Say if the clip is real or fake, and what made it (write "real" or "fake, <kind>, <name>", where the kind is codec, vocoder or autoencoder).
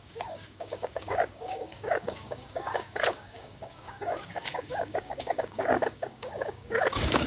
fake, codec, DAC